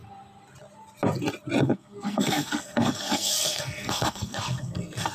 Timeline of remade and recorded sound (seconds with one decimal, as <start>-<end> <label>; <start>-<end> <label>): 0.0-1.6 recorded; 1.6-5.1 remade